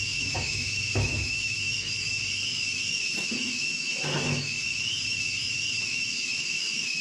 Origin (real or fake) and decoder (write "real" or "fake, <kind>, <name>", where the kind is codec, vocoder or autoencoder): fake, autoencoder, DAC-VAE